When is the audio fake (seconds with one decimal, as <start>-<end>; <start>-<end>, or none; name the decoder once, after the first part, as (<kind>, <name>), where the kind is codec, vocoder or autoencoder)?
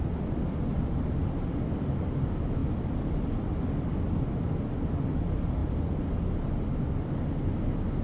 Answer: none